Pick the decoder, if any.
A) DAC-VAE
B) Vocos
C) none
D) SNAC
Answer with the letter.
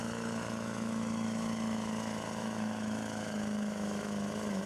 A